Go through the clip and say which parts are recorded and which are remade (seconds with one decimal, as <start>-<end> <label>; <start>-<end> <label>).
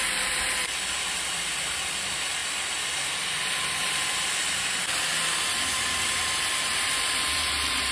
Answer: 0.0-2.4 remade; 2.4-3.8 recorded; 3.8-7.9 remade